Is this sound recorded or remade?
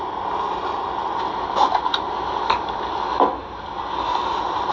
recorded